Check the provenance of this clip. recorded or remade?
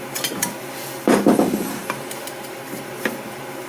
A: recorded